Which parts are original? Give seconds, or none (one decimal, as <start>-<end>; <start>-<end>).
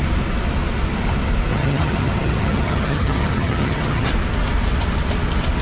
0.0-1.5; 4.1-5.6